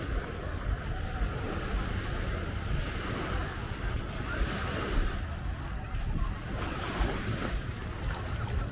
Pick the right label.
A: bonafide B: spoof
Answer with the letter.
A